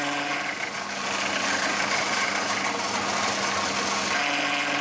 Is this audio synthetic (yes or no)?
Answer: no